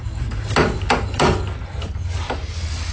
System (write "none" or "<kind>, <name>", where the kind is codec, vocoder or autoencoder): none